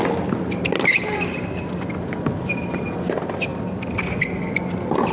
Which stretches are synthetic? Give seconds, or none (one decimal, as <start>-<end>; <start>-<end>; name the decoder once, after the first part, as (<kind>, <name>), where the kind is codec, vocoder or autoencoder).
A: none